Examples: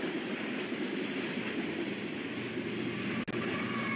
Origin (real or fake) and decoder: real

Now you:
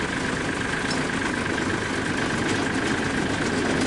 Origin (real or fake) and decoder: real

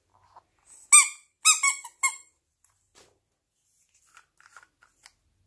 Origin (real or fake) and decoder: real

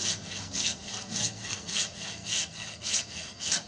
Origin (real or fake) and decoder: fake, codec, SNAC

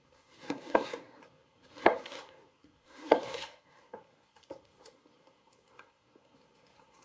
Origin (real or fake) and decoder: fake, codec, SNAC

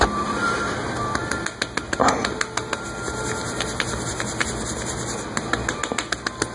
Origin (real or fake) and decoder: real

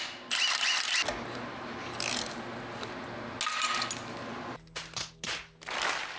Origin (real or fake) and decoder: real